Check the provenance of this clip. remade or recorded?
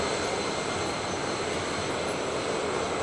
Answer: recorded